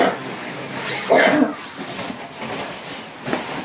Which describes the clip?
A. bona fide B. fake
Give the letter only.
A